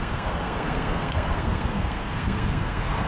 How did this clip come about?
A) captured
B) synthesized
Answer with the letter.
B